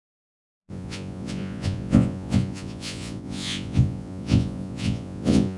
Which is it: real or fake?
fake